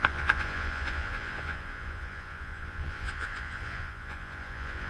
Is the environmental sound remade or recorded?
remade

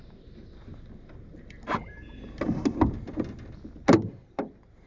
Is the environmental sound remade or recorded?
recorded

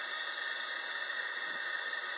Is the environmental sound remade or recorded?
recorded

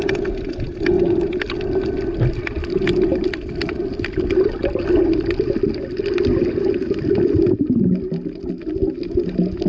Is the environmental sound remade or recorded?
recorded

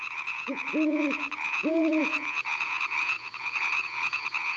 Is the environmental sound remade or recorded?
remade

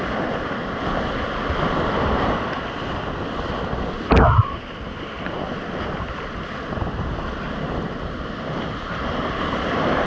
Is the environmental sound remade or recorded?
recorded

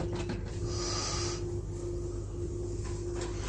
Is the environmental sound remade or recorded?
recorded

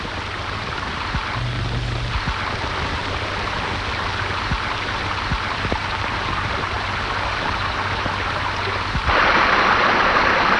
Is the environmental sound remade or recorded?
recorded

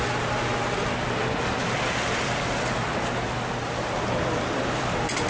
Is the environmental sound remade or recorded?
recorded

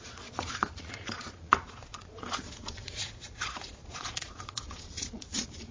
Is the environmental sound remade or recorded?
remade